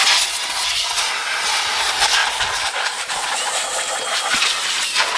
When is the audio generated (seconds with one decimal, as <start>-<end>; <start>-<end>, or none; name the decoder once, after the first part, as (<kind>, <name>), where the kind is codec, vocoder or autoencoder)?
1.5-5.2 (vocoder, BigVGAN v2)

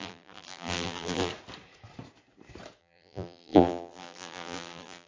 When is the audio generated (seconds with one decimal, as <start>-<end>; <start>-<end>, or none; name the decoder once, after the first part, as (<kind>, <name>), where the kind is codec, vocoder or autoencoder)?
0.0-1.3 (vocoder, BigVGAN v2); 2.8-5.1